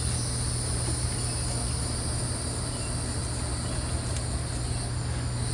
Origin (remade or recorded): recorded